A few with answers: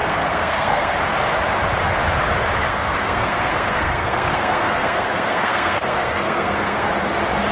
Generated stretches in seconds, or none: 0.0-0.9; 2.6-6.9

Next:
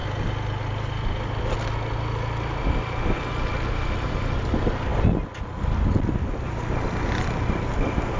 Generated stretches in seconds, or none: none

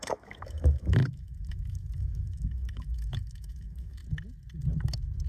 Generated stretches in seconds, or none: 0.0-4.0

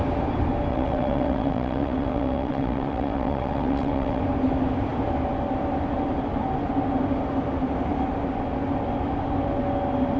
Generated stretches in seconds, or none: 0.7-4.2

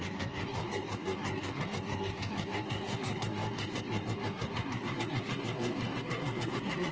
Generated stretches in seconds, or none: 0.0-6.9

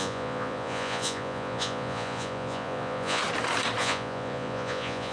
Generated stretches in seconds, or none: 0.0-3.2; 3.8-5.1

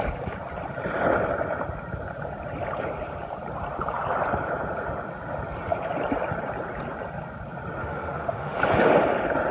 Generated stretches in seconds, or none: 7.8-8.6